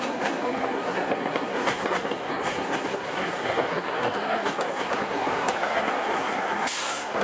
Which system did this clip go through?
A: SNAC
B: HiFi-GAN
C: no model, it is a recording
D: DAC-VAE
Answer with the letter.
A